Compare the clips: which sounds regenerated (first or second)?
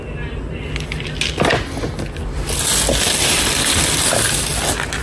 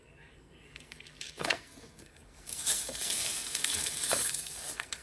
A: second